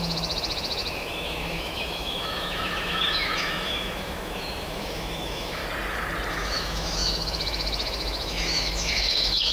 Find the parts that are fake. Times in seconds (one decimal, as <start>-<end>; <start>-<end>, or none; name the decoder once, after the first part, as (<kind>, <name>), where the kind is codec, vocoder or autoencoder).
0.0-5.6 (autoencoder, DAC-VAE); 6.3-9.5